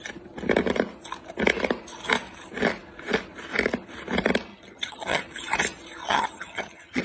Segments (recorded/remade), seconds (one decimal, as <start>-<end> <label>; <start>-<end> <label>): 0.0-4.5 recorded; 4.5-5.2 remade; 5.2-6.0 recorded; 6.0-7.0 remade